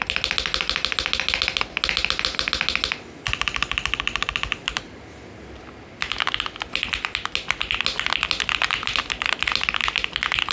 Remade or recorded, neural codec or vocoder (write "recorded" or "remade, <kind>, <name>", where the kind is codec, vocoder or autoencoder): recorded